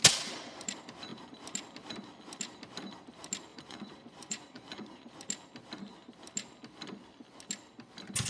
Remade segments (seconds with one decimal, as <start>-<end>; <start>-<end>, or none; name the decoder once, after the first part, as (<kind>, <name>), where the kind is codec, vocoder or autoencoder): 3.5-5.1 (vocoder, Vocos)